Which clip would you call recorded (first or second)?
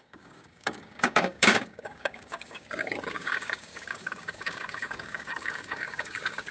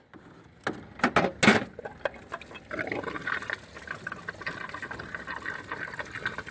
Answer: second